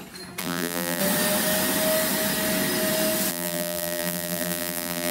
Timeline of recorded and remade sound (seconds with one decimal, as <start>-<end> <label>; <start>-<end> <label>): 0.0-0.4 recorded; 0.4-1.0 remade; 1.0-3.3 recorded; 3.3-5.1 remade